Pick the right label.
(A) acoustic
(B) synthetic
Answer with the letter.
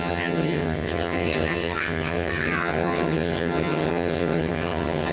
B